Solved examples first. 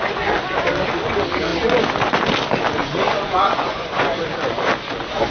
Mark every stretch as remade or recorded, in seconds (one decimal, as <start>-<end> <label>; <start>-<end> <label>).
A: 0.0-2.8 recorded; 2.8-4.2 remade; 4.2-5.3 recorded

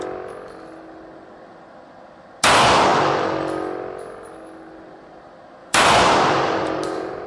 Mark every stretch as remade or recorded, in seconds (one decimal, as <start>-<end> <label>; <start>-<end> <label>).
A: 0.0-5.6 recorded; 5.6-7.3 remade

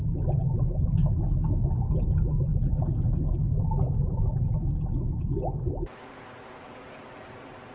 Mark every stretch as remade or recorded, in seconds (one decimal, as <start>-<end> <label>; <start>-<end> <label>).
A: 0.0-7.7 recorded

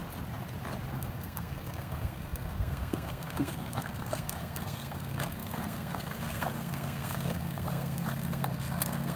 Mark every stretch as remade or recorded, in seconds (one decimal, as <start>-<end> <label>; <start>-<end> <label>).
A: 0.0-0.9 recorded; 0.9-9.2 remade

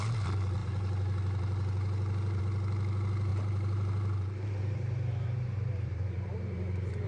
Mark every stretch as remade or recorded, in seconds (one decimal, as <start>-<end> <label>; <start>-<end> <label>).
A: 0.0-0.6 recorded; 0.6-2.4 remade; 2.4-3.3 recorded; 3.3-7.1 remade